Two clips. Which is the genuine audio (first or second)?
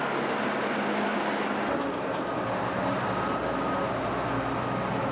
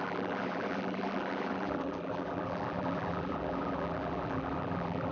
first